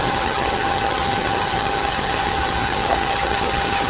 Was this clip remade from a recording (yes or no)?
yes